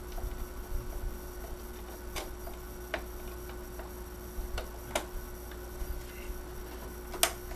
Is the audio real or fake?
real